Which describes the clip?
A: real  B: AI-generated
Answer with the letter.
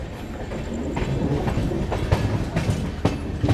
A